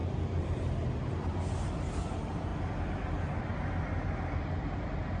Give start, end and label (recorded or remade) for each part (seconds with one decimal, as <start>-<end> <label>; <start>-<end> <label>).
0.0-5.2 recorded